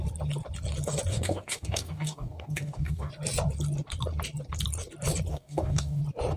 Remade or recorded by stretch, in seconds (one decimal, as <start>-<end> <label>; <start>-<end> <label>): 0.0-1.1 recorded; 1.1-3.1 remade; 3.1-5.3 recorded; 5.3-6.0 remade; 6.0-6.4 recorded